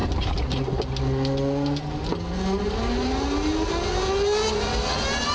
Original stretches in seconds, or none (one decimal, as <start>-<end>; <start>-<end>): 0.0-5.3

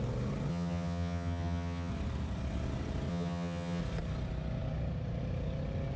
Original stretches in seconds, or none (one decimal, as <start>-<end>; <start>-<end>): 0.0-0.5; 1.9-3.1; 3.8-6.0

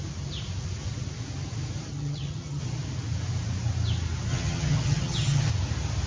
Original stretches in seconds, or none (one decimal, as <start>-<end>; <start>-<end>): 0.0-1.9; 2.6-4.3; 5.5-6.1